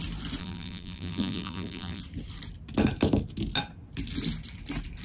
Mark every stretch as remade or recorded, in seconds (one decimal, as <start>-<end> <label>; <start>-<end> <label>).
0.0-0.4 recorded; 0.4-2.0 remade; 2.0-5.0 recorded